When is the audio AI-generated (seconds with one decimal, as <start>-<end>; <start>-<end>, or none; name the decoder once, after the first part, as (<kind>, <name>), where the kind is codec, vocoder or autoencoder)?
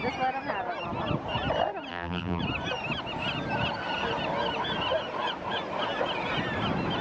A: 1.9-2.4 (vocoder, BigVGAN v2)